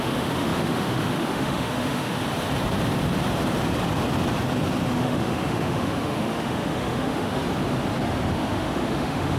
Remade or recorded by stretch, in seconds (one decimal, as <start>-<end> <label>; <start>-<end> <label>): 0.0-2.2 remade; 2.2-4.9 recorded; 4.9-7.4 remade; 7.4-8.3 recorded; 8.3-9.4 remade